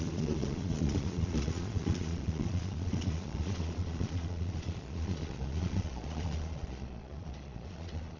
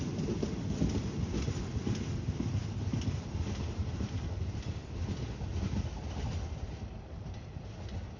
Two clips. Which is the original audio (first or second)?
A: second